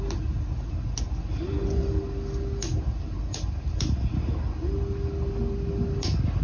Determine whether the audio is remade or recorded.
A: recorded